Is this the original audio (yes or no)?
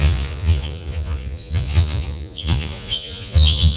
no